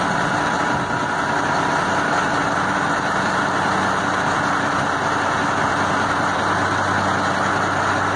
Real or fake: real